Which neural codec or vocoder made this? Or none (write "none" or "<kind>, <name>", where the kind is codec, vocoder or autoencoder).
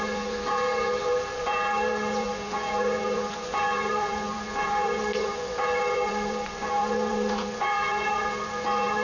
vocoder, Vocos